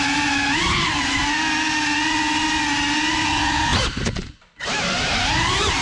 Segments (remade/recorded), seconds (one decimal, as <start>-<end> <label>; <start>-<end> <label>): 0.0-1.2 remade; 1.2-3.1 recorded; 3.1-5.8 remade